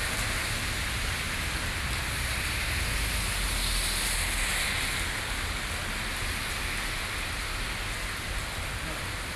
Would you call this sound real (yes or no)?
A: yes